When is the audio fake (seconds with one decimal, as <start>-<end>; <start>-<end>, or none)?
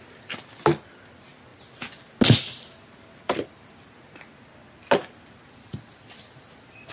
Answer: none